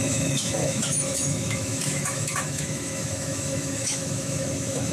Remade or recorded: remade